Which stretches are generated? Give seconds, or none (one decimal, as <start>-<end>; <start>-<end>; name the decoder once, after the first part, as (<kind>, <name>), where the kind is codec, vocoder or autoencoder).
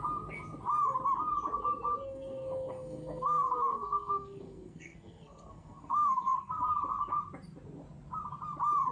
1.9-6.7 (codec, SNAC)